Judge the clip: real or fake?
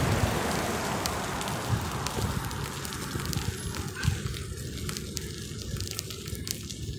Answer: real